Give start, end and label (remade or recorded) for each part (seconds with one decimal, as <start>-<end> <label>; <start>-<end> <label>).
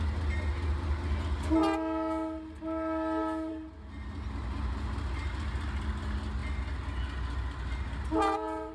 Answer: 0.0-8.7 recorded